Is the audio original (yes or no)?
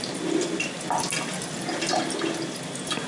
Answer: yes